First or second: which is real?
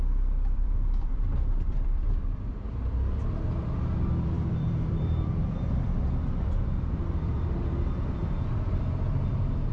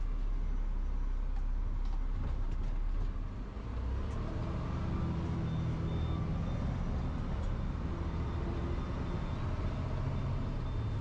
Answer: second